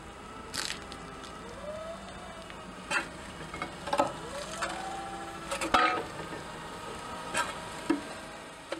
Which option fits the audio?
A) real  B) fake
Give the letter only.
A